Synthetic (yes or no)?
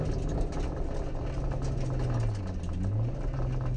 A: no